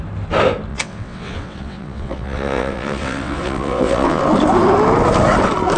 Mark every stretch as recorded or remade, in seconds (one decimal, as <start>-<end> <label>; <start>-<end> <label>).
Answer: 0.0-0.7 recorded; 0.7-4.2 remade; 4.2-5.8 recorded